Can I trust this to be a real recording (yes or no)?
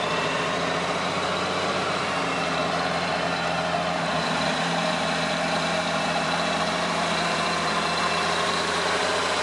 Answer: no